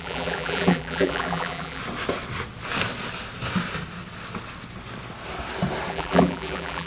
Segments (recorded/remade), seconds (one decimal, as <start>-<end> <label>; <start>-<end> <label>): 0.0-1.8 remade; 1.8-5.9 recorded; 5.9-6.9 remade